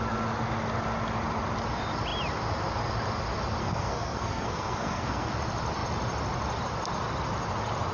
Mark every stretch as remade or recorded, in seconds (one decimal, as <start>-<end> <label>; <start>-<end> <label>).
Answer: 0.0-3.6 recorded; 3.6-5.3 remade; 5.3-7.9 recorded